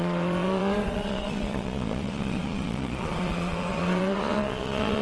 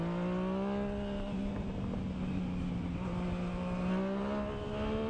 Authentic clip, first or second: second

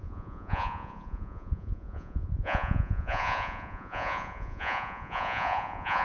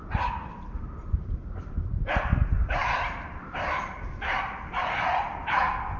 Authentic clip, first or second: second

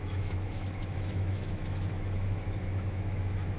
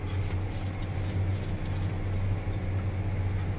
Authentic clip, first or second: second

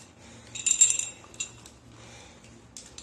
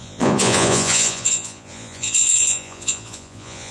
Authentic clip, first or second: first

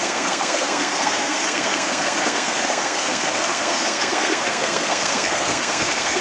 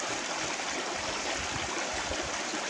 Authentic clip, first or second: second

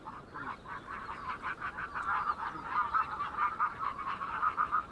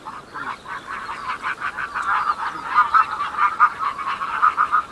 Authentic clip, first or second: second